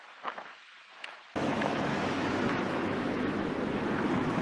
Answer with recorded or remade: remade